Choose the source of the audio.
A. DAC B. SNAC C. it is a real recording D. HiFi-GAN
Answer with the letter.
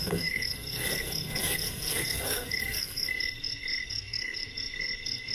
B